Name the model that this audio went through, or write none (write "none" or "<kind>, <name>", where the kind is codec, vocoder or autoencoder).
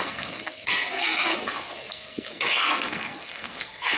codec, SNAC